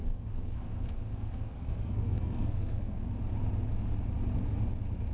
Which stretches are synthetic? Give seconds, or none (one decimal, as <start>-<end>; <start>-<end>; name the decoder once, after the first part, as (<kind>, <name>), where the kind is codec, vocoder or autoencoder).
0.0-3.1 (codec, SNAC)